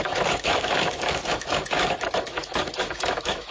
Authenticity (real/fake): fake